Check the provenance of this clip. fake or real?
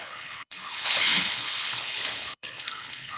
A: fake